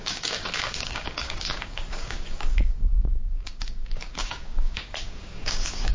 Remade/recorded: remade